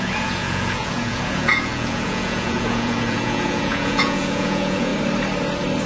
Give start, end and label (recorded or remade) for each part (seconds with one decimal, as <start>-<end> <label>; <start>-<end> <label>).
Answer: 0.0-4.9 remade; 4.9-5.9 recorded